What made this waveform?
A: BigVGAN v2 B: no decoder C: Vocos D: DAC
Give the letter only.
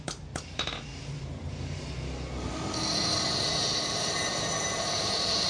A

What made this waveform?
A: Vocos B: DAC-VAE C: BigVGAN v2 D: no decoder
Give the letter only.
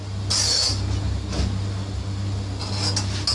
D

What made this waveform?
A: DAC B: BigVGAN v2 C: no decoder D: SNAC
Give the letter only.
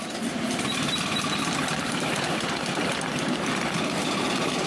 B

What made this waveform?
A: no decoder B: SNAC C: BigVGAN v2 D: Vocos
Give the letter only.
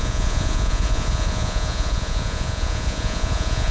D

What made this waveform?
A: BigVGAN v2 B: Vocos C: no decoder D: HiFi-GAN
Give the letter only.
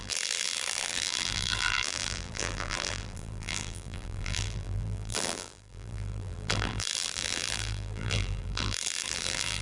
A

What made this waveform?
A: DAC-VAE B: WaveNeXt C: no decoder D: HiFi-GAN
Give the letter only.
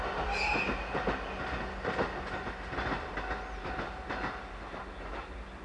C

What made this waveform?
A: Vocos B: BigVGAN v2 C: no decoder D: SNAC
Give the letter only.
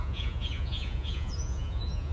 A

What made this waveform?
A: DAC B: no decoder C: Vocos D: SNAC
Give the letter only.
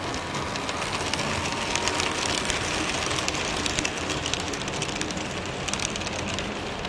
B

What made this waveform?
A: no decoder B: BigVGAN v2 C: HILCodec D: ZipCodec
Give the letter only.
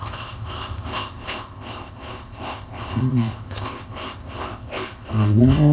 D